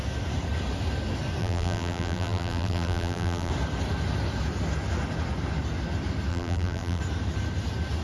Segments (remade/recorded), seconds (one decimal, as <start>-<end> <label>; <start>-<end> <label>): 0.0-1.4 recorded; 1.4-3.5 remade; 3.5-6.3 recorded; 6.3-7.0 remade; 7.0-8.0 recorded